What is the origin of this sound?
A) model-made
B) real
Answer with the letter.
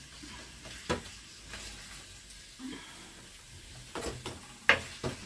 B